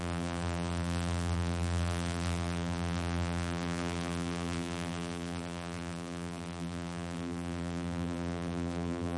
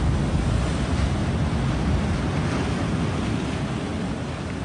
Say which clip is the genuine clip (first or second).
second